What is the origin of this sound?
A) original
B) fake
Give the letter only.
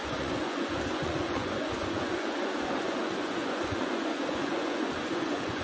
B